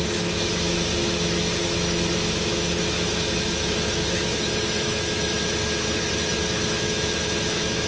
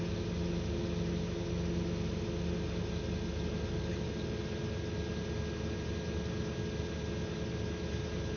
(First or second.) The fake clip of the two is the first